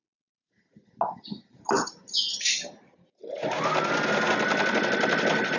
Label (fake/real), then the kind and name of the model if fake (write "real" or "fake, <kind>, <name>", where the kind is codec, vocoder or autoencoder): real